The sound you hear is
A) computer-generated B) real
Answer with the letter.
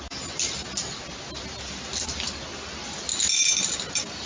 B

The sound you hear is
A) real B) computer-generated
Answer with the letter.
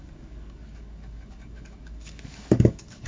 B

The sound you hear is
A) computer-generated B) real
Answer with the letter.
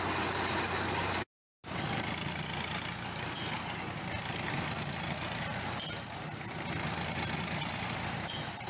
B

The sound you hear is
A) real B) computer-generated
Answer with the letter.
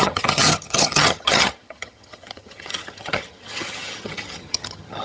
B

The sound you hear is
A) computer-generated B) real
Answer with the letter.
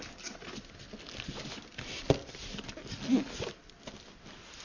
B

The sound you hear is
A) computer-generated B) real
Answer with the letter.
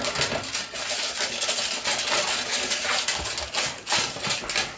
B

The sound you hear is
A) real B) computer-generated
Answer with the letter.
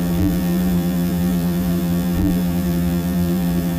B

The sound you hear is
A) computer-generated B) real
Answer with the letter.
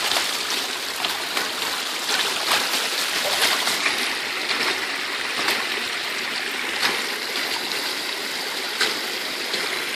B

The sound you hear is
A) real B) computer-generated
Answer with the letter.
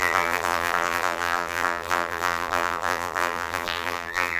B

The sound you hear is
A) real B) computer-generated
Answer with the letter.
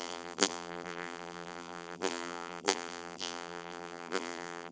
B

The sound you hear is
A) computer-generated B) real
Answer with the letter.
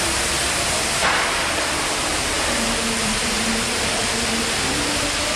B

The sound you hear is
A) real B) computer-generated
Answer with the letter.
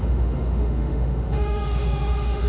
B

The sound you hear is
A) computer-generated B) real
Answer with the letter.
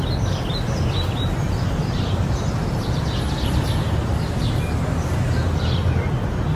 B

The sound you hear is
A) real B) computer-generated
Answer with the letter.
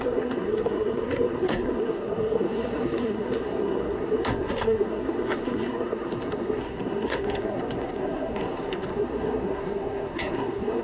B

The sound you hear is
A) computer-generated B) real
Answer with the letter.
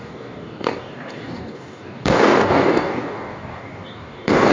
A